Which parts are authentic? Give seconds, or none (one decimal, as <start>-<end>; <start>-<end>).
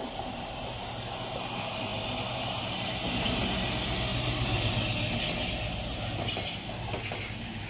0.0-7.7